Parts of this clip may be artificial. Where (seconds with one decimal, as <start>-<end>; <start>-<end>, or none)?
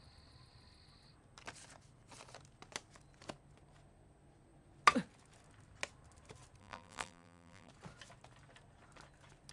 6.6-7.7